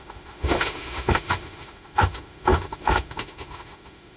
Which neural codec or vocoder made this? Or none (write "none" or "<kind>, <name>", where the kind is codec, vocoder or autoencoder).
autoencoder, DAC-VAE